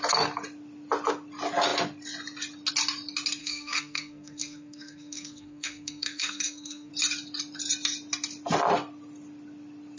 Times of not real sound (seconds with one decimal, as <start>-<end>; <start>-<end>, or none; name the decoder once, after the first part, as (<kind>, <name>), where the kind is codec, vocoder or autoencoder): 3.4-6.9 (codec, SNAC)